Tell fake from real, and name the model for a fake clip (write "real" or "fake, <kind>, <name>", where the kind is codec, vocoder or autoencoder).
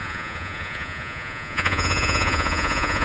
fake, vocoder, Vocos